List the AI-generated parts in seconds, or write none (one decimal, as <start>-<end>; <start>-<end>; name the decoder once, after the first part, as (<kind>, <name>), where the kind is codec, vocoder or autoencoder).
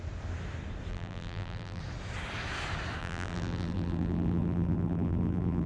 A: 0.9-1.8 (vocoder, BigVGAN v2); 3.0-5.7